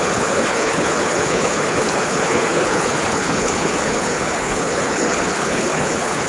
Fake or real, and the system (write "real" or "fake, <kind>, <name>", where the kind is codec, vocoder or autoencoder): fake, codec, HILCodec